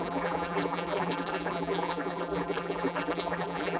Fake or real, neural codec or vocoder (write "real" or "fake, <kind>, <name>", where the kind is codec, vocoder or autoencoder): fake, vocoder, BigVGAN v2